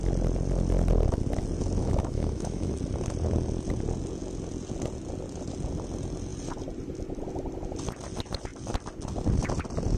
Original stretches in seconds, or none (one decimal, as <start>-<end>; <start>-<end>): 0.0-1.8; 2.7-10.0